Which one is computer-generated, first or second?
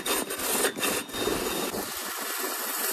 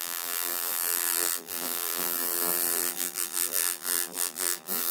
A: second